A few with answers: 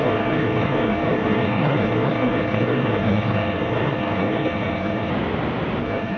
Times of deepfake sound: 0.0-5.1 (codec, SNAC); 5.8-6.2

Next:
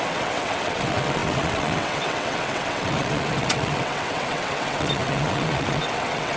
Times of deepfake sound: 0.0-6.4 (vocoder, WaveNeXt)

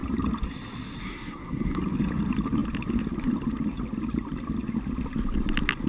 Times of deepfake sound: 1.0-1.8 (codec, SNAC)

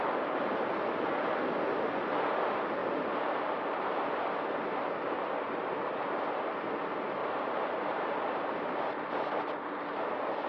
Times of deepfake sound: 7.2-8.5 (vocoder, BigVGAN v2)

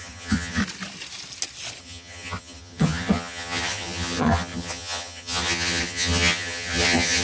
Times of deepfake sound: 0.0-0.6 (vocoder, HiFi-GAN); 1.8-7.2

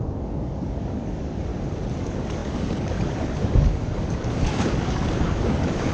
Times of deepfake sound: 0.0-1.5 (codec, DAC); 2.0-5.9

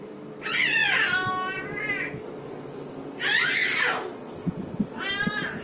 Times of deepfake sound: none

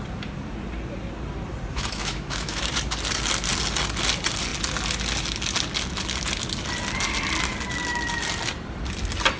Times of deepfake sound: 1.7-2.6 (autoencoder, DAC-VAE)